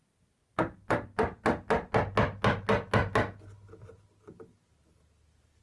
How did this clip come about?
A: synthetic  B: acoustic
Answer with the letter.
B